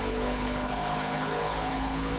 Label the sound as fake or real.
fake